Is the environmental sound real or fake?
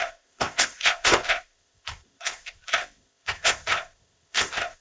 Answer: fake